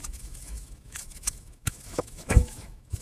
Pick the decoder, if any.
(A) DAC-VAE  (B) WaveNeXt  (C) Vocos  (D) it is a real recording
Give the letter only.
A